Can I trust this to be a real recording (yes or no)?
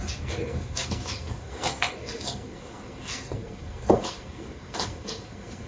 no